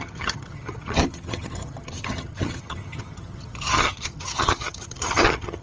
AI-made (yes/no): yes